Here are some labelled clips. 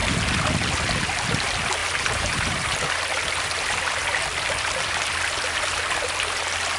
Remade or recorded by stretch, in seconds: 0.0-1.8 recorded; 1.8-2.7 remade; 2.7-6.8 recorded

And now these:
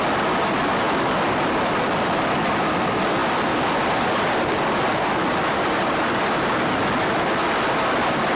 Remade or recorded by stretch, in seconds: 0.0-3.2 recorded; 3.2-5.6 remade; 5.6-8.4 recorded

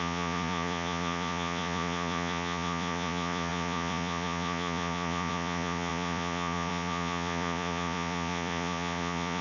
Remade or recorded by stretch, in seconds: 0.0-9.4 remade

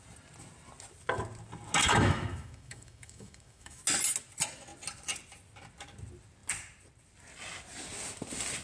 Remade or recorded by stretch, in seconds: 0.0-1.8 recorded; 1.8-3.8 remade; 3.8-8.6 recorded

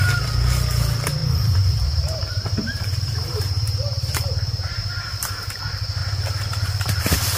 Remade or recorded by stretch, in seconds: 0.0-1.2 recorded; 1.2-4.9 remade; 4.9-6.0 recorded; 6.0-7.0 remade; 7.0-7.4 recorded

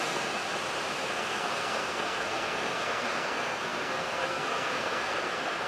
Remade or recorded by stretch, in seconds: 0.0-0.4 remade; 0.4-0.9 recorded; 0.9-5.7 remade